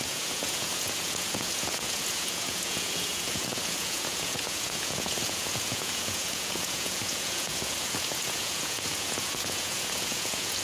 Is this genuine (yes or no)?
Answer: no